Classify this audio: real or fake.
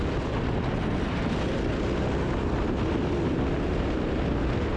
real